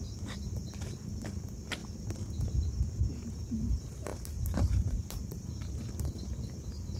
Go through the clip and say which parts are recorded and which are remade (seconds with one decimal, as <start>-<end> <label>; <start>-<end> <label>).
0.0-1.8 remade; 1.8-3.3 recorded; 3.3-7.0 remade